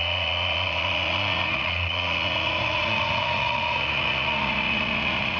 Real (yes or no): no